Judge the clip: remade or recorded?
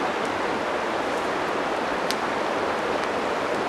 recorded